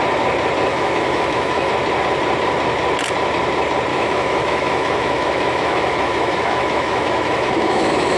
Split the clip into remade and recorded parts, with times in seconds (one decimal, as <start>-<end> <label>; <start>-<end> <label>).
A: 0.0-0.7 recorded; 0.7-1.7 remade; 1.7-3.9 recorded; 3.9-8.2 remade